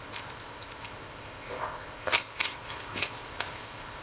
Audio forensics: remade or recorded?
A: remade